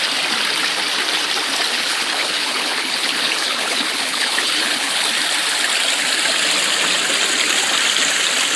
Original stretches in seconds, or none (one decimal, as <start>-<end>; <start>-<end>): 0.0-1.7; 5.0-8.6